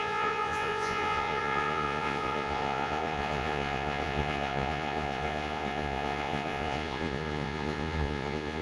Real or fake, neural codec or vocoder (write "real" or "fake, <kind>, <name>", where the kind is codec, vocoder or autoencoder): fake, vocoder, Vocos